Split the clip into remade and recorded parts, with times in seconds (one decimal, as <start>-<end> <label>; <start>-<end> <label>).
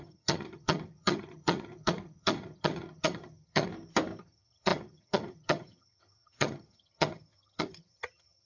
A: 0.0-3.7 remade; 3.7-4.2 recorded; 4.2-8.5 remade